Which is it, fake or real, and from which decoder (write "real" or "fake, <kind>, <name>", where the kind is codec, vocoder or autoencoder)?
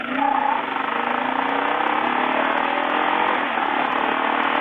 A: real